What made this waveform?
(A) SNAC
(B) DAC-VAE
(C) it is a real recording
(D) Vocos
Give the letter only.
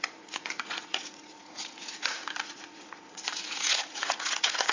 D